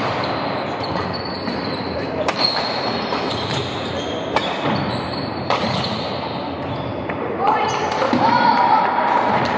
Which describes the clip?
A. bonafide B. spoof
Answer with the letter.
B